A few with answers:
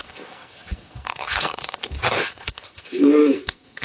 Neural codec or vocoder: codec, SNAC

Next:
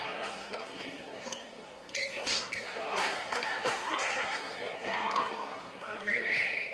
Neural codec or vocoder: codec, SNAC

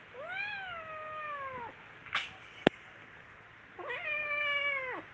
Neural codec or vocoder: none